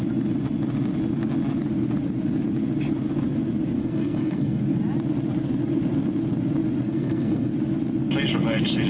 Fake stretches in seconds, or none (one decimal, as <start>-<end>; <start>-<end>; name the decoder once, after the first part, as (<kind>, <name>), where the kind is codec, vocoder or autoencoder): 3.8-4.6 (codec, SNAC); 6.9-7.5